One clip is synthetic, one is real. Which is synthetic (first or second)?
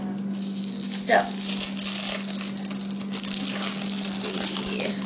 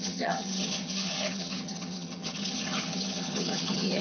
second